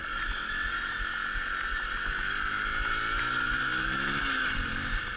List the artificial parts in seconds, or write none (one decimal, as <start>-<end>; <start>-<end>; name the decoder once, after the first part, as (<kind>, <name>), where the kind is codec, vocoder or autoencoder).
0.0-0.8 (vocoder, BigVGAN v2); 1.7-4.8